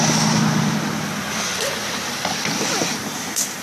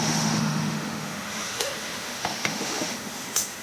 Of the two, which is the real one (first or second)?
first